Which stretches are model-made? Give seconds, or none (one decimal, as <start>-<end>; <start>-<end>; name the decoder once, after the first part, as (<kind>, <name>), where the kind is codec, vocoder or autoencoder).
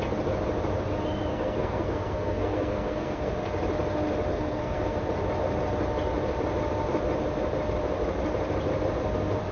1.3-3.3 (codec, SNAC); 4.3-5.0